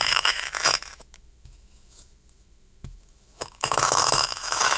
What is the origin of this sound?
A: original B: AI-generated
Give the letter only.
B